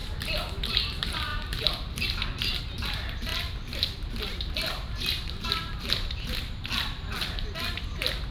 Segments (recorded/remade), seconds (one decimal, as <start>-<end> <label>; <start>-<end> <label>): 0.0-0.7 remade; 0.7-3.3 recorded; 3.3-5.8 remade; 5.8-8.3 recorded